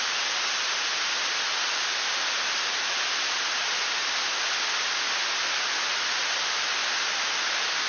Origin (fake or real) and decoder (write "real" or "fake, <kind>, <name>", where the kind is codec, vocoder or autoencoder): real